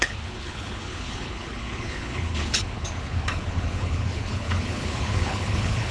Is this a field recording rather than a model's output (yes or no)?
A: no